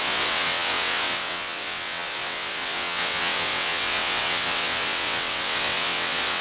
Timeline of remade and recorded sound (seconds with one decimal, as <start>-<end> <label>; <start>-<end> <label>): 0.0-6.4 remade